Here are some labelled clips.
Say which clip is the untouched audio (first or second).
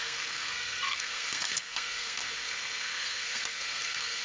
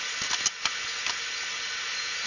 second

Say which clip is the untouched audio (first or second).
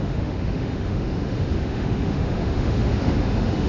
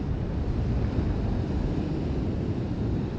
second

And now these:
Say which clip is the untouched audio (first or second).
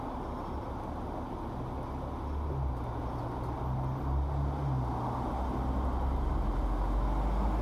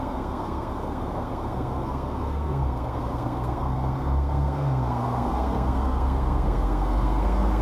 first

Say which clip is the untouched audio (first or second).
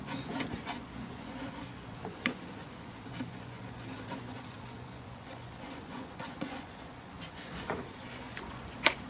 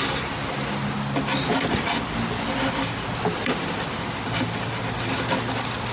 second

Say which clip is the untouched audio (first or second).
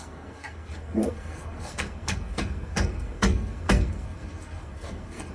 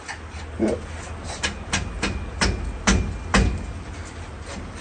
second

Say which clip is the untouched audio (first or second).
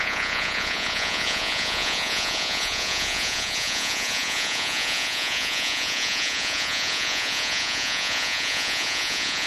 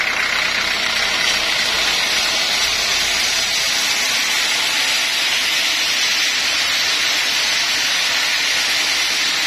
second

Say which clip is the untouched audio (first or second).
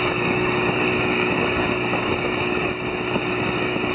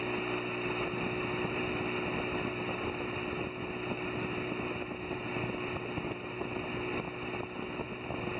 second